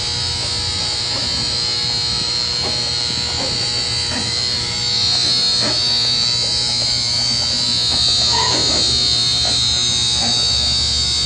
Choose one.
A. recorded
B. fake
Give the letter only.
B